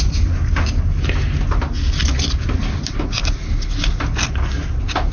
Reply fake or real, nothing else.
real